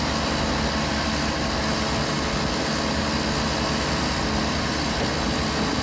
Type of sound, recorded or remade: recorded